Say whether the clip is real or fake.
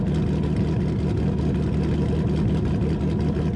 real